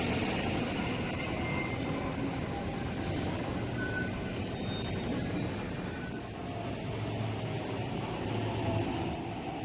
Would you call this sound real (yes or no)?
yes